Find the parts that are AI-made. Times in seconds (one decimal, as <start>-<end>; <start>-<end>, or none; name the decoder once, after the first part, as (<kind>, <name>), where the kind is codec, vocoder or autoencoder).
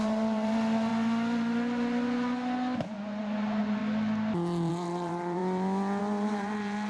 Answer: 0.0-0.9 (vocoder, BigVGAN v2); 2.8-3.8; 4.7-5.4; 6.0-6.9